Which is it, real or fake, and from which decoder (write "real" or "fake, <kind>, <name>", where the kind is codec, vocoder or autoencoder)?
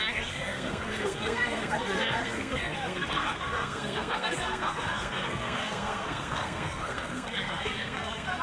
fake, codec, SNAC